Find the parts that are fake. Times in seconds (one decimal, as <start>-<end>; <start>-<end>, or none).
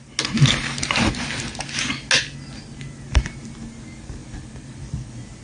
4.2-5.4